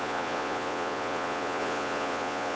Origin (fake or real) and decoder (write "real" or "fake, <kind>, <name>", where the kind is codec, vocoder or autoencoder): fake, vocoder, Vocos